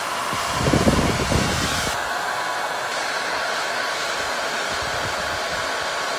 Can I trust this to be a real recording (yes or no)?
yes